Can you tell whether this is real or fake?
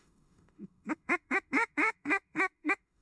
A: fake